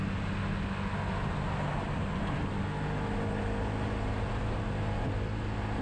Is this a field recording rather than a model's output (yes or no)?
yes